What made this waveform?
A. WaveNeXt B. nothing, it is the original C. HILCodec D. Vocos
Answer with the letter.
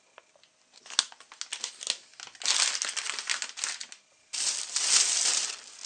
B